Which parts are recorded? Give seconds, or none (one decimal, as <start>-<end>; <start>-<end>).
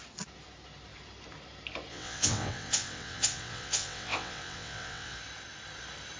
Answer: 0.0-1.9; 5.2-6.2